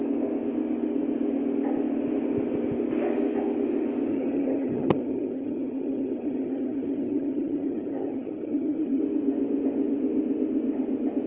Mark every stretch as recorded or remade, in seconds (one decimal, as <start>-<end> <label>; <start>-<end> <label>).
0.0-4.1 recorded; 4.1-9.0 remade; 9.0-11.3 recorded